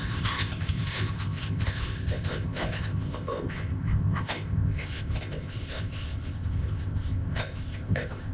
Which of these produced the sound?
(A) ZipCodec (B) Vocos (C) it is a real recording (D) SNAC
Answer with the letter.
A